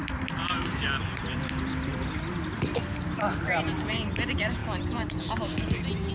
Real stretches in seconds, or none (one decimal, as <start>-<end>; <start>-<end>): none